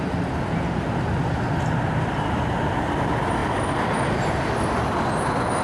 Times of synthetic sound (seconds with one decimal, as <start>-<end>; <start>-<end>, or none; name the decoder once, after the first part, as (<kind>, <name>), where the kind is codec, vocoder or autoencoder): 3.4-4.6 (vocoder, BigVGAN v2)